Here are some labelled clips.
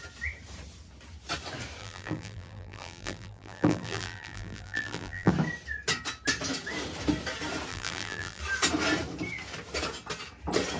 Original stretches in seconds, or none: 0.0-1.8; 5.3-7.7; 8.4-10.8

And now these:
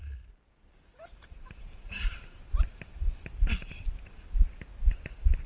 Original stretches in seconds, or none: 0.0-0.9; 4.2-5.5

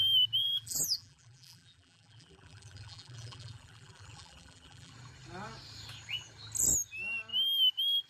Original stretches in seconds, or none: 0.0-0.4; 4.9-8.1

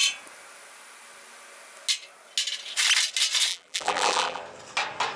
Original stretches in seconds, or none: 0.0-3.5; 4.4-5.2